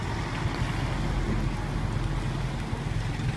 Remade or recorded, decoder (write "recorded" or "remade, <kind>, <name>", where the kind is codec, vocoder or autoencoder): recorded